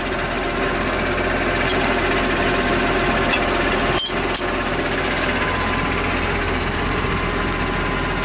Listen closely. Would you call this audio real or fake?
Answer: real